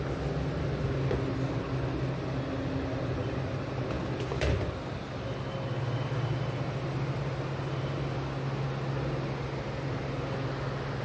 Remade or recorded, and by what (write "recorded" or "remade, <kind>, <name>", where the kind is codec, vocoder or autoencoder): recorded